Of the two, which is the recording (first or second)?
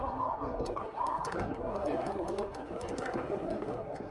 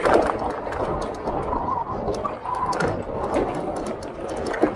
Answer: second